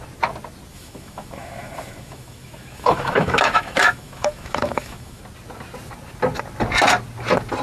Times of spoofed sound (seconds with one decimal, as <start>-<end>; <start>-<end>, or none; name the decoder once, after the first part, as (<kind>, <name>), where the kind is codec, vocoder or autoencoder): 0.7-5.2 (autoencoder, DAC-VAE)